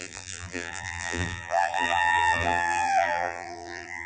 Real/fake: fake